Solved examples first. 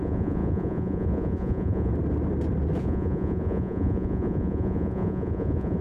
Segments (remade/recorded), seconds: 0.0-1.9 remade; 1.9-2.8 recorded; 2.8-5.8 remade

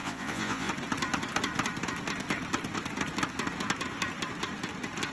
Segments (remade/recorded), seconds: 0.0-0.7 remade; 0.7-5.1 recorded

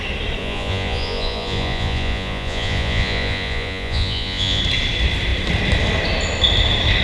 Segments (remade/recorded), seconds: 0.0-0.4 recorded; 0.4-4.6 remade; 4.6-7.0 recorded

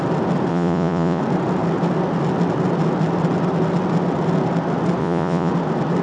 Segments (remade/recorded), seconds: 0.0-0.5 recorded; 0.5-1.2 remade; 1.2-5.0 recorded; 5.0-5.5 remade; 5.5-6.0 recorded

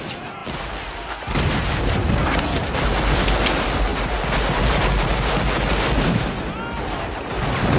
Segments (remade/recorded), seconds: 0.0-7.8 recorded

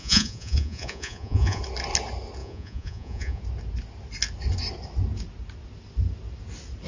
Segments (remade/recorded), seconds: 0.0-1.6 remade; 1.6-2.4 recorded; 2.4-3.4 remade; 3.4-6.9 recorded

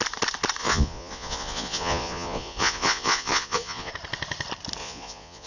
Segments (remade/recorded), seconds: 0.0-0.6 recorded; 0.6-3.9 remade; 3.9-4.8 recorded; 4.8-5.5 remade

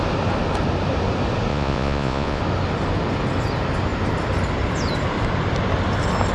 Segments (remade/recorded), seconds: 0.0-1.5 recorded; 1.5-2.4 remade; 2.4-6.3 recorded